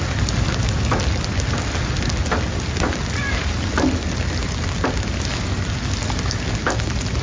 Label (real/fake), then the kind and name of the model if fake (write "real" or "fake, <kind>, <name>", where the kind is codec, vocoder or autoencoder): real